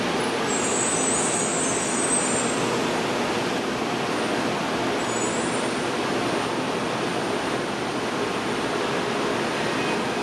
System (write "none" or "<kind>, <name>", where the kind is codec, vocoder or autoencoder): none